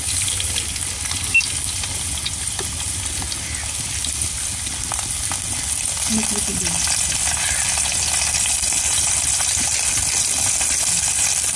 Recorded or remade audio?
recorded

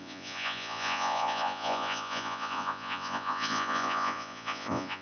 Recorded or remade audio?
remade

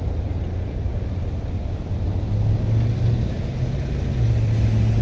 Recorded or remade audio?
recorded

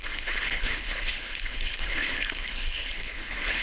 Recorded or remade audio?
remade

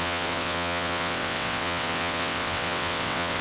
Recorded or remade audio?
remade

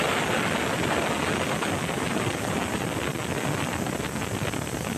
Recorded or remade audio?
recorded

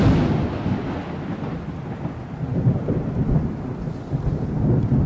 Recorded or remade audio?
recorded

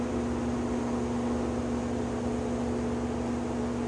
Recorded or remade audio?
recorded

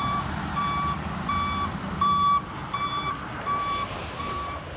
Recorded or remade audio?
remade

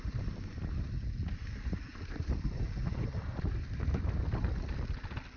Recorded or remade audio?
recorded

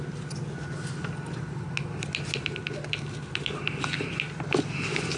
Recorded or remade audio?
recorded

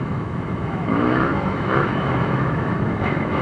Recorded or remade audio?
remade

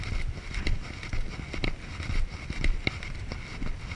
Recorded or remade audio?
recorded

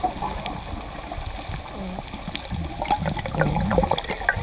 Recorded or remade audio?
recorded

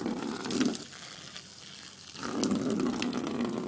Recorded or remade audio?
recorded